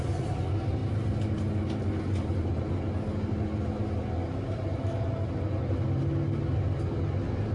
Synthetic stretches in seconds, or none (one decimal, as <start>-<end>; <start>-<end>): none